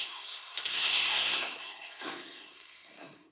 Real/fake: fake